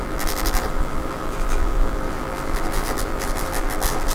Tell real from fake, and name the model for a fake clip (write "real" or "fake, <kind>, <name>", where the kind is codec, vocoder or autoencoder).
fake, vocoder, BigVGAN v2